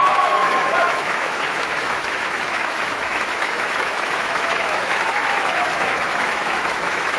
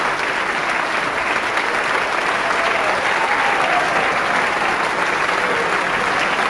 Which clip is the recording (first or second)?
second